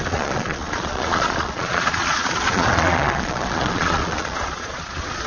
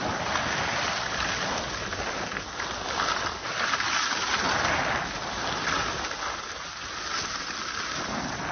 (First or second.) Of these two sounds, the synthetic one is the first